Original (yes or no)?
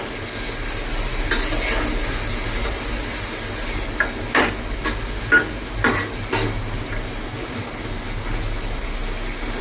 yes